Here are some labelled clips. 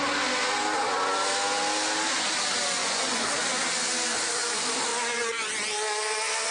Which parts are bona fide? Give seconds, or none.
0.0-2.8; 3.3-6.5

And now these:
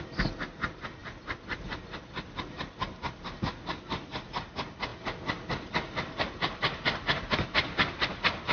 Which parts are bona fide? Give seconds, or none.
0.0-8.5

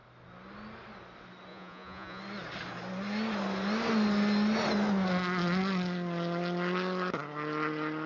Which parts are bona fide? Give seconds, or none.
0.0-1.5; 2.2-8.1

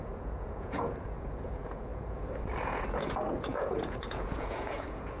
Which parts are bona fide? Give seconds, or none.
none

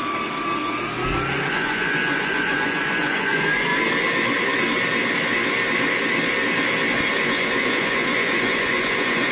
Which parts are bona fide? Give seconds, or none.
0.0-1.5; 3.7-7.1